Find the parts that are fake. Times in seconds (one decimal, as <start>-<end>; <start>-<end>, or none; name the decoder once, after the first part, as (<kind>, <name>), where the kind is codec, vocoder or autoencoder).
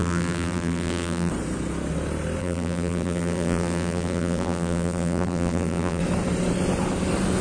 0.0-1.3 (vocoder, BigVGAN v2); 2.4-6.0